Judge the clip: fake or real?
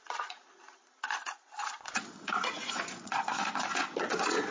fake